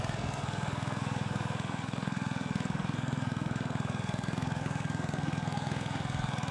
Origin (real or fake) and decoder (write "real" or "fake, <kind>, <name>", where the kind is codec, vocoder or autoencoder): fake, codec, SNAC